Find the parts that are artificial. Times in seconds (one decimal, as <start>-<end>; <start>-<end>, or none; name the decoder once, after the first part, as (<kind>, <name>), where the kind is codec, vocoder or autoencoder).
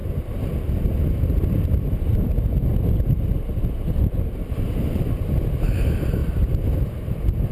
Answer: 0.0-2.7 (vocoder, BigVGAN v2); 4.5-7.5